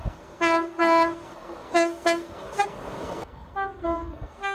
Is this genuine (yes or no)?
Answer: no